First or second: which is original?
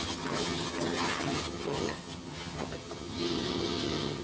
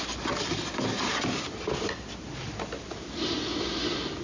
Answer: second